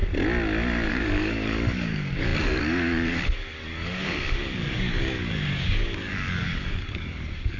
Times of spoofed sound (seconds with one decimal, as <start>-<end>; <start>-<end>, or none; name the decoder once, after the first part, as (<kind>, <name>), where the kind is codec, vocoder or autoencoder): 0.9-7.6 (codec, DAC)

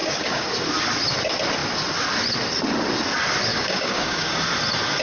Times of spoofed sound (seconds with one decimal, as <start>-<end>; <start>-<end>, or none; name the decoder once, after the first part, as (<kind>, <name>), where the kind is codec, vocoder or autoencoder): 0.0-0.5 (codec, DAC); 3.5-4.4